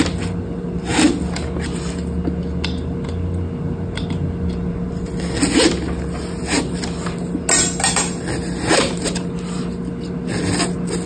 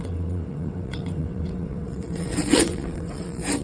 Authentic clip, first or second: first